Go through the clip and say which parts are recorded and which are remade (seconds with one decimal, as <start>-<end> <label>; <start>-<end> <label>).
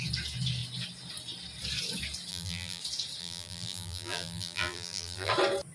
0.0-2.3 recorded; 2.3-2.8 remade; 2.8-3.2 recorded; 3.2-5.3 remade; 5.3-5.7 recorded